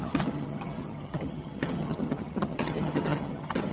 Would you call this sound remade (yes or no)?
yes